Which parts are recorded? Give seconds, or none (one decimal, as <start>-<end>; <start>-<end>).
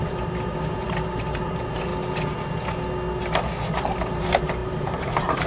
1.9-3.2